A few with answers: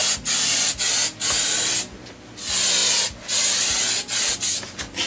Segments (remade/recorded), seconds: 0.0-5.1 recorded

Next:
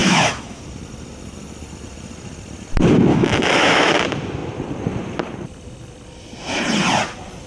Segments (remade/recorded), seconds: 0.0-0.6 remade; 0.6-3.1 recorded; 3.1-3.9 remade; 3.9-7.5 recorded